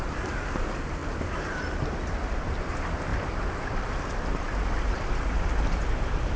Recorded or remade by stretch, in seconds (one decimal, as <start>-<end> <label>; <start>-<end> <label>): 0.0-6.4 recorded